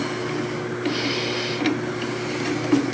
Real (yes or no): yes